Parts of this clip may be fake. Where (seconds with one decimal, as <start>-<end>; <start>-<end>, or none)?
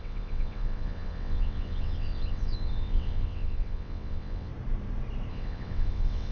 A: 0.0-4.5; 5.3-6.3